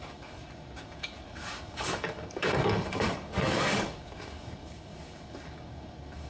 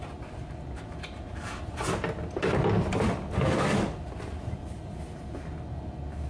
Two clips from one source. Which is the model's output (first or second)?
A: first